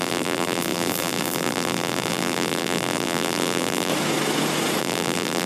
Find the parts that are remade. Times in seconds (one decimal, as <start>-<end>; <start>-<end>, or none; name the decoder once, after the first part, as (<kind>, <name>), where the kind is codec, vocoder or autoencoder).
0.0-3.9 (vocoder, BigVGAN v2); 4.8-5.5